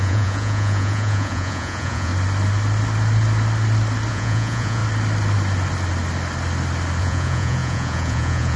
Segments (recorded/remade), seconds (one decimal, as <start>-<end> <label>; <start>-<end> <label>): 0.0-2.1 remade; 2.1-4.1 recorded; 4.1-4.8 remade; 4.8-7.0 recorded; 7.0-8.6 remade